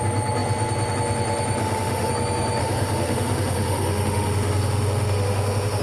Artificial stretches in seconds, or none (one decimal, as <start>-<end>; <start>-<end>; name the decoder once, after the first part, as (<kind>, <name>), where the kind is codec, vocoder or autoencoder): 1.6-2.1 (autoencoder, DAC-VAE); 2.6-5.8